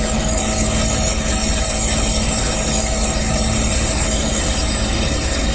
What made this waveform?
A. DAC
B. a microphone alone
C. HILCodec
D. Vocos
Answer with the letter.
A